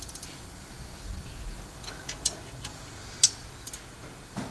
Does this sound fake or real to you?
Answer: real